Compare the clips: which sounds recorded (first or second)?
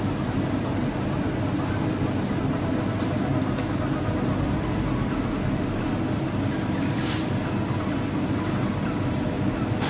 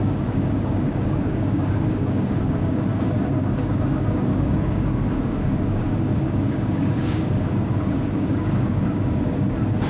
first